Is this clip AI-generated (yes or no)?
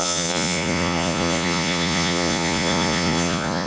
yes